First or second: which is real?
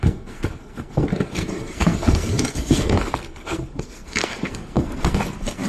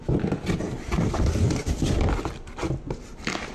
second